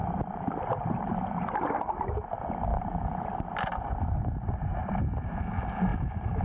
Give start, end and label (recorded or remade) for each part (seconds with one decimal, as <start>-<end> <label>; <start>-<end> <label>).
0.0-1.1 remade; 1.1-2.7 recorded; 2.7-4.9 remade; 4.9-5.9 recorded; 5.9-6.4 remade